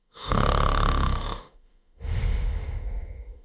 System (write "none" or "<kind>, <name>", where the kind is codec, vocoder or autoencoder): autoencoder, DAC-VAE